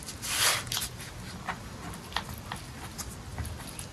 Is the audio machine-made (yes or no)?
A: no